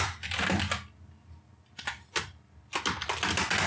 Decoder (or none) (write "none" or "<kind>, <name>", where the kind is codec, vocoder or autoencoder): none